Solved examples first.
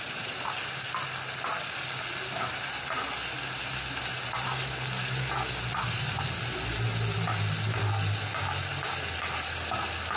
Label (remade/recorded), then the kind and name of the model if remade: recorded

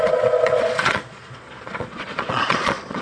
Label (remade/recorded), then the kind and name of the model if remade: remade, vocoder, Vocos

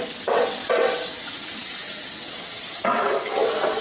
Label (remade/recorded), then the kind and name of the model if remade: remade, vocoder, WaveNeXt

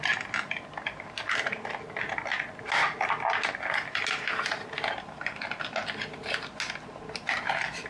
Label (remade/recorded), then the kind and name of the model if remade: recorded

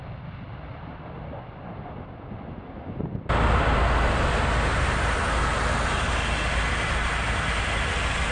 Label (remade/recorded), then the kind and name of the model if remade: recorded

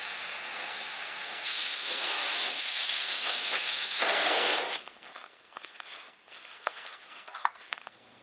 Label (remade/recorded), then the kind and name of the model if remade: remade, codec, SNAC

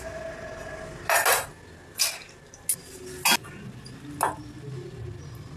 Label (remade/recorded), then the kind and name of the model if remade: recorded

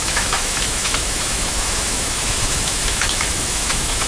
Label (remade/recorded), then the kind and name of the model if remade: remade, autoencoder, DAC-VAE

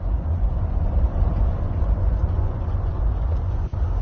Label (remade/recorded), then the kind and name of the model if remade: remade, vocoder, Vocos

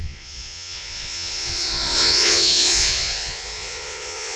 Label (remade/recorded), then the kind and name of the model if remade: remade, vocoder, Vocos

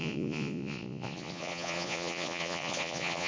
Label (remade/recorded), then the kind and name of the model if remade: remade, vocoder, Vocos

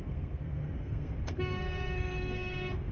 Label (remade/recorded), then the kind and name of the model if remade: remade, codec, SNAC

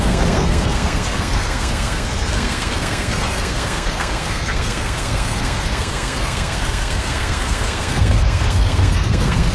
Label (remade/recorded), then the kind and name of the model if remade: remade, codec, SNAC